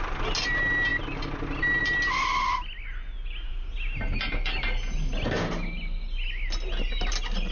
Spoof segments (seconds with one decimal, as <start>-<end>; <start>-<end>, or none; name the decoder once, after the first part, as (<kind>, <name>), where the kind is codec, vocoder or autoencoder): none